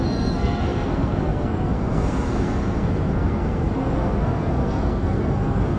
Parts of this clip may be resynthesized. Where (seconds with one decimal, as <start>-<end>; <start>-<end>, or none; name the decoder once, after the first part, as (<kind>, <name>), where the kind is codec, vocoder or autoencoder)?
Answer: 0.0-5.8 (codec, SNAC)